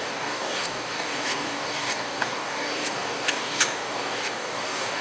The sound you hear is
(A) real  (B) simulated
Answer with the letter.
B